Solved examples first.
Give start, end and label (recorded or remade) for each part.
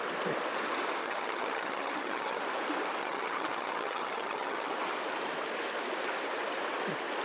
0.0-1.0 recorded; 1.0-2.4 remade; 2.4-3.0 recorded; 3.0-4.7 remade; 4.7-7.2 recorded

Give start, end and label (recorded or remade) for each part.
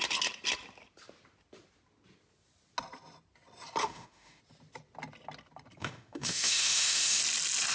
0.0-3.8 recorded; 3.8-4.4 remade; 4.4-5.8 recorded; 5.8-7.2 remade; 7.2-7.7 recorded